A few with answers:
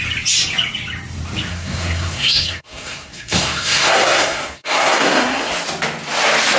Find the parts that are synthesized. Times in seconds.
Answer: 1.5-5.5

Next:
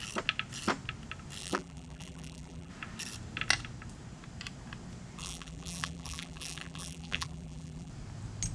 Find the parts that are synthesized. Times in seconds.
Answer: 1.4-2.7; 5.2-7.9

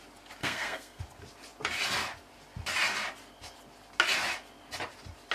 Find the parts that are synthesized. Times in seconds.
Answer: 0.4-1.0

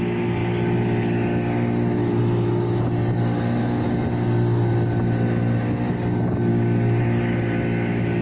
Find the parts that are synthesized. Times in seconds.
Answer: 6.5-7.0

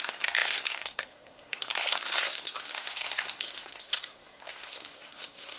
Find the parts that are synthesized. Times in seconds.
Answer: 0.0-5.6

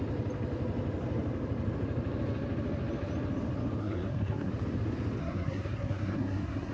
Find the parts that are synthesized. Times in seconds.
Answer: 3.8-4.5; 5.2-6.7

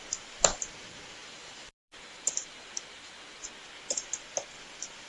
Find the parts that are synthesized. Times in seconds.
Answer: 1.2-3.5

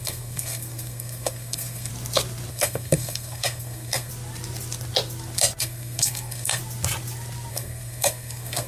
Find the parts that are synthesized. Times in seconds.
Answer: 0.0-1.9; 2.5-4.1; 5.6-6.6; 7.5-8.7